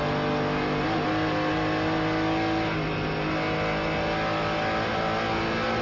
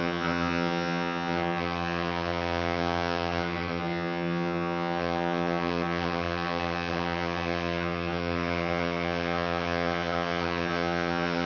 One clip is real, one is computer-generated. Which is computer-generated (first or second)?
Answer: second